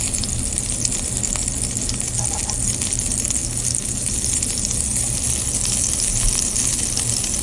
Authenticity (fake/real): real